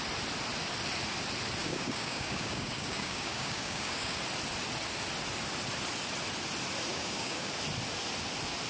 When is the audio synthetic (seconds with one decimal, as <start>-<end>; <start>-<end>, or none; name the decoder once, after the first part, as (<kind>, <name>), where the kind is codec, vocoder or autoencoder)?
1.6-4.2 (codec, DAC); 6.9-7.5